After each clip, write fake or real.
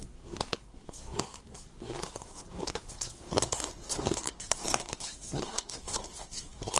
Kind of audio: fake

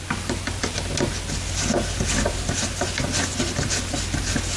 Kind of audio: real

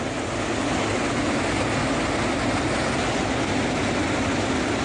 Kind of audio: real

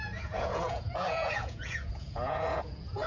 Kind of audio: fake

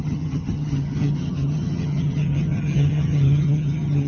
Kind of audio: fake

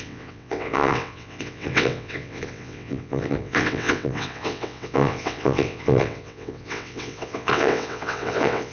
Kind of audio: fake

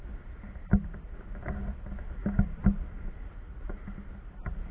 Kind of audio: real